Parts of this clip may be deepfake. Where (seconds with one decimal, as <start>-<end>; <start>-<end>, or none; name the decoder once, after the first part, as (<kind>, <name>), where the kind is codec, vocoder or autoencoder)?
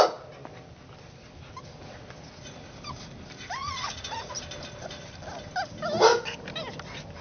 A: 3.6-4.3 (vocoder, Vocos)